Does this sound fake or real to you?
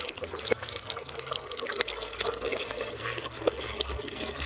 fake